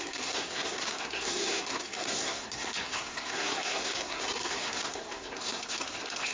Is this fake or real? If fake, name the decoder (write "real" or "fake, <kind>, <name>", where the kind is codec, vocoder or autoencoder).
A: fake, codec, SNAC